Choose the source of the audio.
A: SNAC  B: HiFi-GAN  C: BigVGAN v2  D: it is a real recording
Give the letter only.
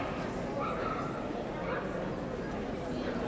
D